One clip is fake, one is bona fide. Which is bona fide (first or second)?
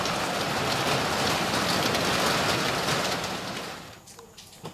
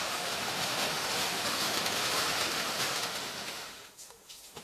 first